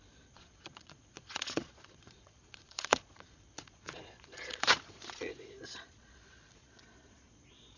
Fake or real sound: fake